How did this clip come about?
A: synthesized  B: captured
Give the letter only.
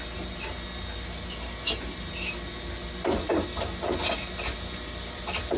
B